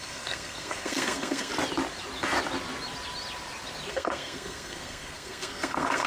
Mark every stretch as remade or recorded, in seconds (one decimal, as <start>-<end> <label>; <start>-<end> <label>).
0.0-1.5 remade; 1.5-3.9 recorded; 3.9-6.1 remade